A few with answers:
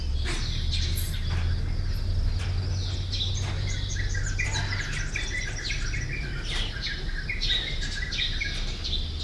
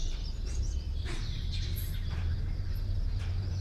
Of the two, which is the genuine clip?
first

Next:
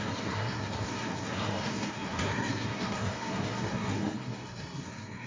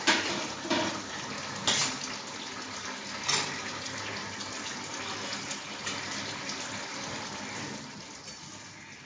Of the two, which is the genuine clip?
second